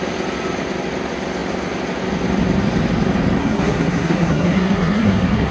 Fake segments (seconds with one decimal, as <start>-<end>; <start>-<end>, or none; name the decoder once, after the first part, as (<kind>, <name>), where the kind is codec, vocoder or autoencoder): 3.4-5.5 (codec, SNAC)